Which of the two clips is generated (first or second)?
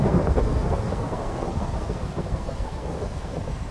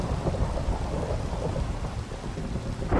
first